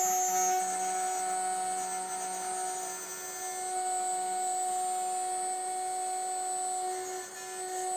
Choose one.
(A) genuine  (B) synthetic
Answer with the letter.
A